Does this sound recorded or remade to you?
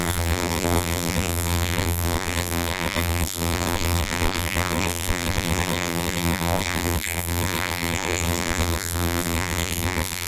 remade